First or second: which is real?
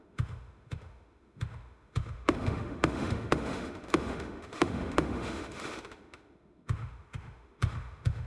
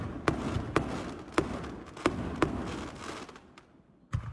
second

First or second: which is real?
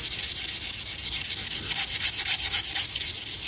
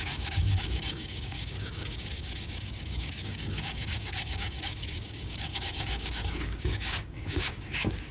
first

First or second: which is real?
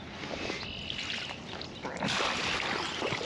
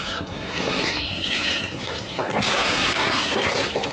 first